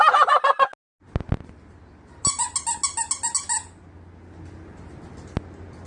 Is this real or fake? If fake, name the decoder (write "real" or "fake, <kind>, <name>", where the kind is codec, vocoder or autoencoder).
real